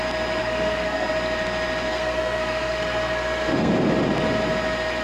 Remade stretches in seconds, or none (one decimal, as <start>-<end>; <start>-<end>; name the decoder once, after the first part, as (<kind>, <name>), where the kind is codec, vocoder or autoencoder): 0.4-1.1 (codec, SNAC); 1.9-3.7